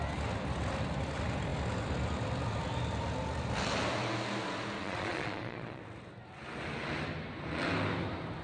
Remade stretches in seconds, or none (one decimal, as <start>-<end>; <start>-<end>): 4.8-5.8